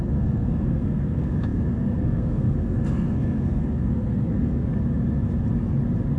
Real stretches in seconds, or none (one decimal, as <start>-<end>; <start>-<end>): 4.7-6.2